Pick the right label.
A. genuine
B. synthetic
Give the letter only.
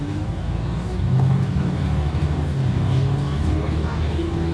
B